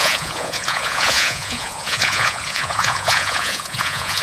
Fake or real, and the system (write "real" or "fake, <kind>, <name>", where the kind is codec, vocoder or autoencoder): fake, vocoder, Vocos